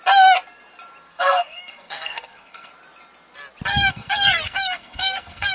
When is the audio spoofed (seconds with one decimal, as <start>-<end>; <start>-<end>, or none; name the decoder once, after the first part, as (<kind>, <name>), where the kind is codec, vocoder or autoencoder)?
1.1-2.7 (codec, SNAC); 3.7-5.5